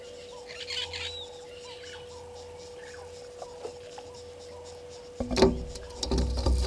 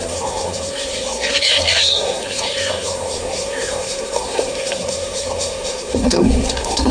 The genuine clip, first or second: first